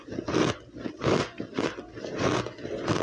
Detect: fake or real real